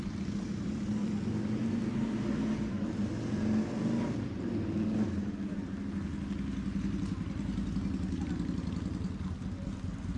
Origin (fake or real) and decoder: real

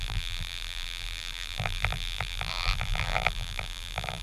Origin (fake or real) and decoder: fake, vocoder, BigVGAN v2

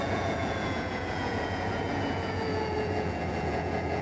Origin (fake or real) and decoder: fake, vocoder, Vocos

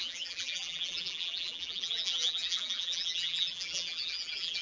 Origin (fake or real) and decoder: fake, vocoder, BigVGAN v2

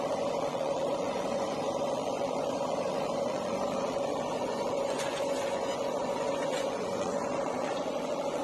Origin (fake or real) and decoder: fake, vocoder, Vocos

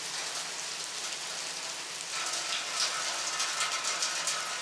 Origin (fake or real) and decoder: real